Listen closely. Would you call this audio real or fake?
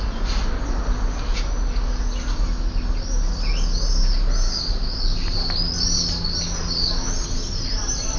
real